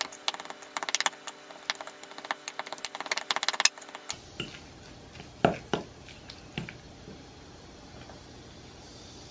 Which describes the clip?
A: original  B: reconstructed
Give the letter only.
A